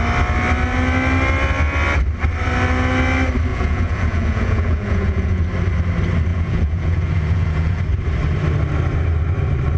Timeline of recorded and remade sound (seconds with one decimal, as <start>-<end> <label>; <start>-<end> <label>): 0.0-3.5 recorded; 3.5-5.4 remade; 5.4-6.3 recorded; 6.3-7.8 remade; 7.8-9.8 recorded